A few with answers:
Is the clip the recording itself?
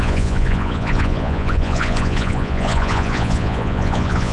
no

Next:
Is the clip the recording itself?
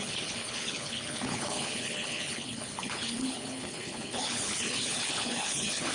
no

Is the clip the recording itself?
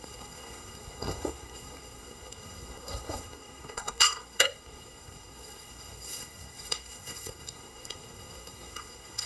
no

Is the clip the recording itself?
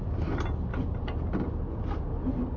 yes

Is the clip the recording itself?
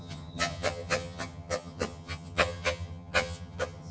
no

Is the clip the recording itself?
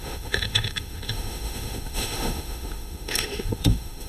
no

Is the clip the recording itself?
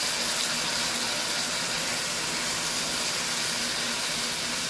yes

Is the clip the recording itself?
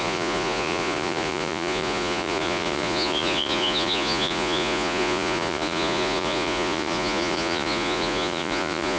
no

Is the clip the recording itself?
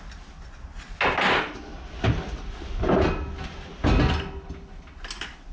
yes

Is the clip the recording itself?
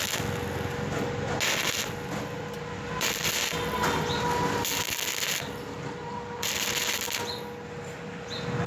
yes